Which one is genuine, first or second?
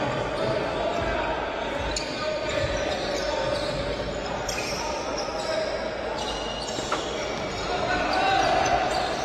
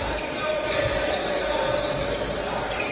second